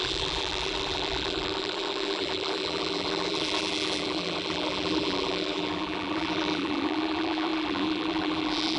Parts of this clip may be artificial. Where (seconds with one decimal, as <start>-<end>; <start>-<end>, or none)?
0.0-8.8